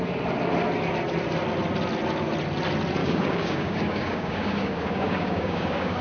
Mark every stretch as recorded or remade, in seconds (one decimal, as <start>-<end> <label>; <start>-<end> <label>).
0.0-3.0 recorded; 3.0-6.0 remade